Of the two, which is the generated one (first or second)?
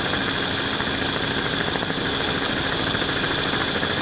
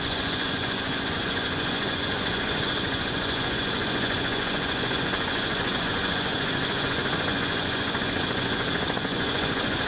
second